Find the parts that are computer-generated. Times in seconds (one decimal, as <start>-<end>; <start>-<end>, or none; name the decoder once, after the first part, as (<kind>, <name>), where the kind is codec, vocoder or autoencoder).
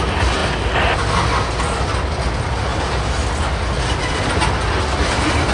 none